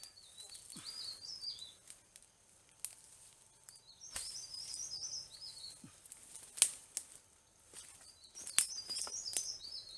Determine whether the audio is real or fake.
real